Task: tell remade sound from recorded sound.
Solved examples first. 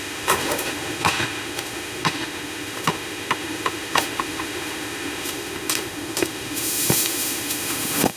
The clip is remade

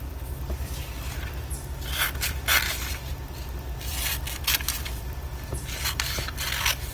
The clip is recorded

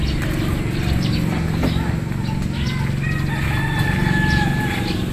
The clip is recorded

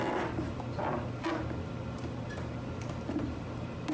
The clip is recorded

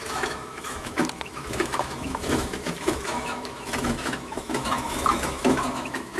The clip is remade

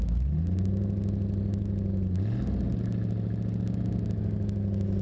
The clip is recorded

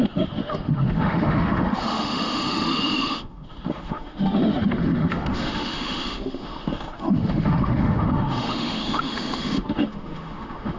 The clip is remade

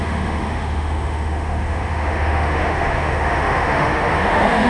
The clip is remade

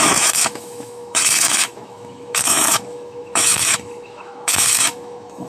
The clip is remade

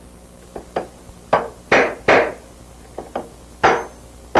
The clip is recorded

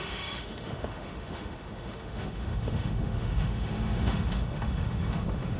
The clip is remade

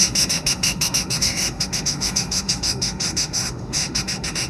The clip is remade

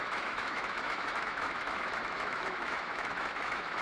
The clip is remade